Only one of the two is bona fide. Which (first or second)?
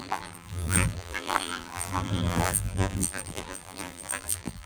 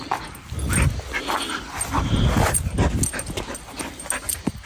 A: second